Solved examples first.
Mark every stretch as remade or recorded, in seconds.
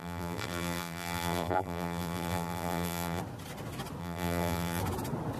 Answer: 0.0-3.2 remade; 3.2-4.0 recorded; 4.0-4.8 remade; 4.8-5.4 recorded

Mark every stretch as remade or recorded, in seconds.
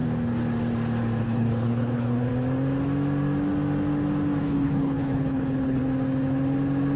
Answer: 0.0-1.2 recorded; 1.2-2.3 remade; 2.3-4.4 recorded; 4.4-5.8 remade; 5.8-7.0 recorded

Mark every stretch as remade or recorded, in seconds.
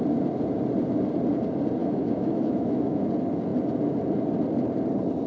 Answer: 0.0-1.8 recorded; 1.8-3.1 remade; 3.1-5.3 recorded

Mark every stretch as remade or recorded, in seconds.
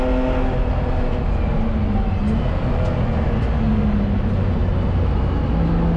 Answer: 0.0-6.0 recorded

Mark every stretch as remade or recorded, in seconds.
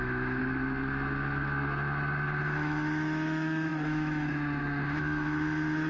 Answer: 0.0-0.4 remade; 0.4-2.4 recorded; 2.4-5.9 remade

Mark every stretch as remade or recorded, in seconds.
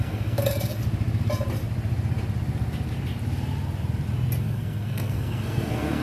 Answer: 0.0-0.8 remade; 0.8-4.4 recorded; 4.4-6.0 remade